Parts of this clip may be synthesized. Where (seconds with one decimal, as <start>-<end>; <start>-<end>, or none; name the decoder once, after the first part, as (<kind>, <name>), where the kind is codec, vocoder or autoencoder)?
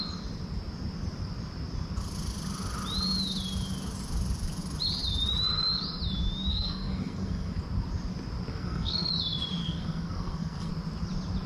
6.5-7.6 (codec, SNAC); 8.5-9.1; 9.6-10.7